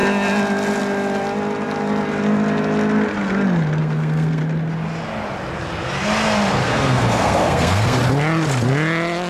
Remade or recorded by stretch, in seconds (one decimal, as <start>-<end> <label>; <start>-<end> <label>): 0.0-3.8 recorded; 3.8-4.4 remade; 4.4-6.5 recorded; 6.5-8.0 remade; 8.0-9.3 recorded